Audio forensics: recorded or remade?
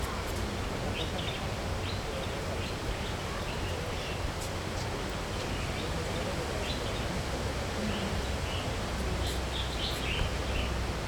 recorded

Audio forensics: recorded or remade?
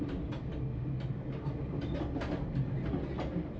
recorded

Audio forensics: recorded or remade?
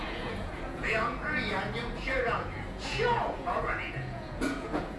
remade